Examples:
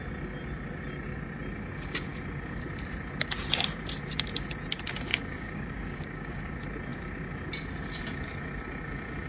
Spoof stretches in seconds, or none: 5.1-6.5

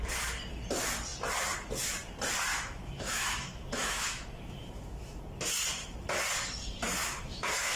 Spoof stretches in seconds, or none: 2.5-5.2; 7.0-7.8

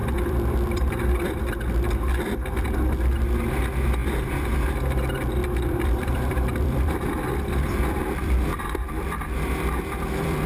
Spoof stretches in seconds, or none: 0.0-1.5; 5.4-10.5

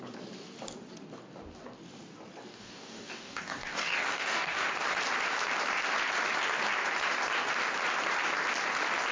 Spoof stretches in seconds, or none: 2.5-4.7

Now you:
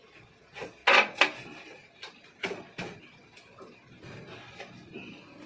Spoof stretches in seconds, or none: none

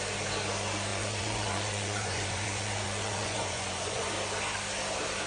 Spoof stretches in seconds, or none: 0.9-4.1

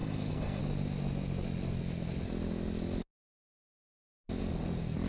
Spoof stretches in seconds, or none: 0.0-0.6

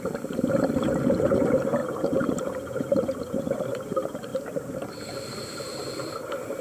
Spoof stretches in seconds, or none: 0.0-6.6